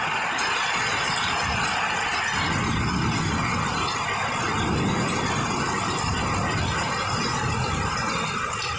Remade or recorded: recorded